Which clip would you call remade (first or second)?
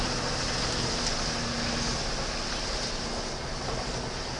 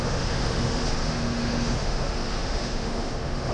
second